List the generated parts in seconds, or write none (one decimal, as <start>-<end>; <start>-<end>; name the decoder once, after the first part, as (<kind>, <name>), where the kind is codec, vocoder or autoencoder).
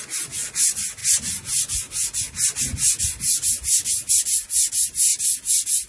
none